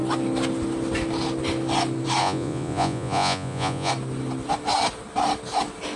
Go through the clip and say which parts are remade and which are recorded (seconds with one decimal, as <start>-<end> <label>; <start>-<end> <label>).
0.0-2.2 recorded; 2.2-3.9 remade; 3.9-6.0 recorded